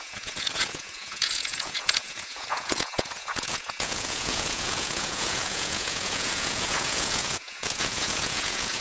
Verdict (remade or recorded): remade